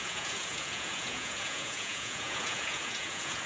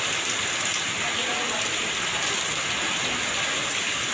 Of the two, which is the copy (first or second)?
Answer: first